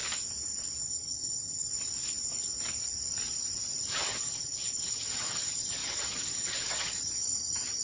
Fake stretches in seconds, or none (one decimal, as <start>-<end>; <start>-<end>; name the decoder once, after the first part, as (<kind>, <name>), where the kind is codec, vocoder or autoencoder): 0.8-1.7 (vocoder, HiFi-GAN); 3.8-7.8